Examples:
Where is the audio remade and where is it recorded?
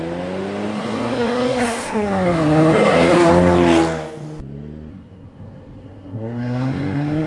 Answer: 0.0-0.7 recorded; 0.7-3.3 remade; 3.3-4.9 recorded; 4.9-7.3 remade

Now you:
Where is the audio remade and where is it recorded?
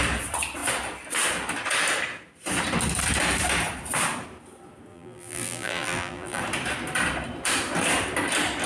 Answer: 0.0-4.9 recorded; 4.9-6.4 remade; 6.4-8.7 recorded